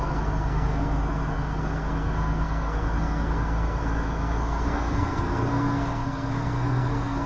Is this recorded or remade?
remade